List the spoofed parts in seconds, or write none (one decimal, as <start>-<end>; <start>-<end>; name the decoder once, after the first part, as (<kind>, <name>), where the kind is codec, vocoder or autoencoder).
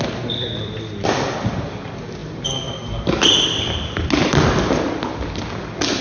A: none